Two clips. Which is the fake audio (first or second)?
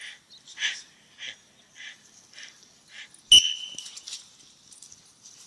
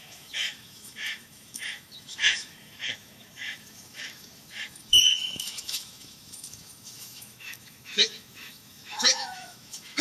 second